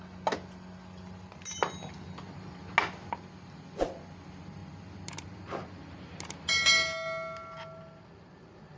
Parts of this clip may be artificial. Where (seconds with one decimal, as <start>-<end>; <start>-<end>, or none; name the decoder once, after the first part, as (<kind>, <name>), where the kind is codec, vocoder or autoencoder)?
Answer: none